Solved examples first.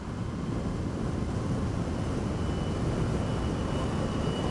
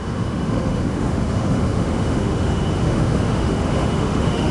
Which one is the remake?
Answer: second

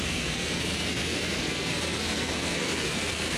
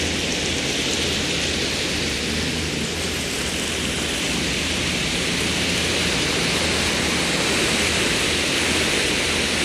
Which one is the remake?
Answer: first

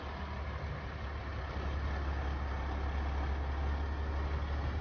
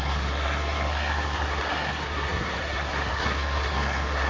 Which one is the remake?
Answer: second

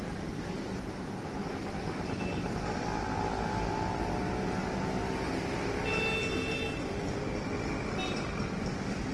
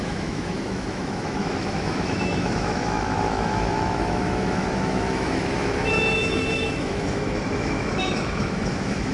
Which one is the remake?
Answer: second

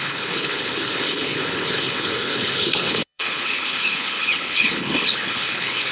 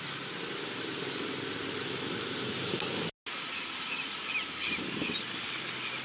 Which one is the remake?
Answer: first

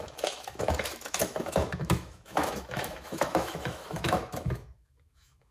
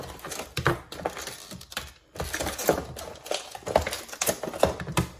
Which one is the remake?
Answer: first